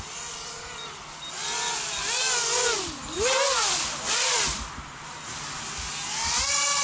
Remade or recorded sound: recorded